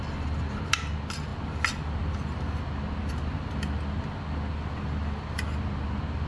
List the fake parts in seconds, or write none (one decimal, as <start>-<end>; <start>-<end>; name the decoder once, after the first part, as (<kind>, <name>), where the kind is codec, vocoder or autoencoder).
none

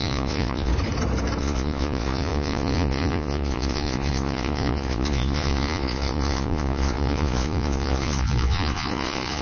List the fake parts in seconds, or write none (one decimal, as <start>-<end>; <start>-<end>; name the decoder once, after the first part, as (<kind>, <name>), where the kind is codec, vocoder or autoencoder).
0.0-0.7 (vocoder, Vocos); 1.4-9.4

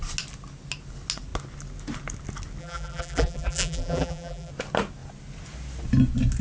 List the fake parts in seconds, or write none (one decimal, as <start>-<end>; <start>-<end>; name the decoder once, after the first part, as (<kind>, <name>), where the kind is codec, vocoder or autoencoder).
2.6-4.5 (vocoder, BigVGAN v2)

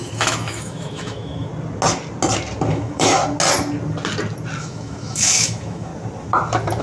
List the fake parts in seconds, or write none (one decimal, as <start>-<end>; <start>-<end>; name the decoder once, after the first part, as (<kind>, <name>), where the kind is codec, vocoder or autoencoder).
0.0-1.5 (autoencoder, DAC-VAE); 2.7-3.2; 4.6-5.9

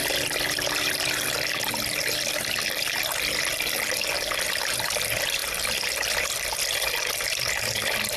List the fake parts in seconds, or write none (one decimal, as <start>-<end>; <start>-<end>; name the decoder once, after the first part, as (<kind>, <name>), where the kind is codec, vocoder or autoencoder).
0.0-2.3 (vocoder, BigVGAN v2); 5.4-6.2

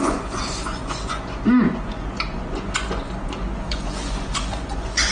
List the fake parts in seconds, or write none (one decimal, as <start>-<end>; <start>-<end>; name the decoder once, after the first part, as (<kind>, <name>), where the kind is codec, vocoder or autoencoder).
0.0-5.1 (vocoder, Vocos)

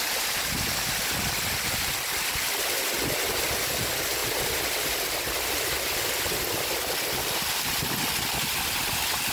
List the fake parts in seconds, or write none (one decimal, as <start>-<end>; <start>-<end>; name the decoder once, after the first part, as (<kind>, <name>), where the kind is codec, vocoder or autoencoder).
none

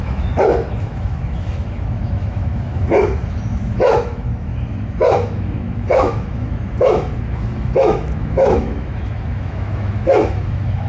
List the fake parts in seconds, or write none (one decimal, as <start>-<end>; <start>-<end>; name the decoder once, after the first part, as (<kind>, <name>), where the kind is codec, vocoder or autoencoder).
0.0-10.9 (autoencoder, DAC-VAE)